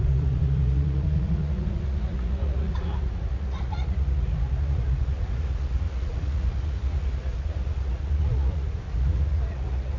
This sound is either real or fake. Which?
fake